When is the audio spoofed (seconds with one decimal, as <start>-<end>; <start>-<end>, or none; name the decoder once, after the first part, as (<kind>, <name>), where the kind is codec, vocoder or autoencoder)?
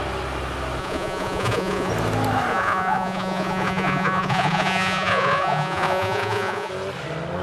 0.8-1.9 (vocoder, Vocos); 2.5-6.7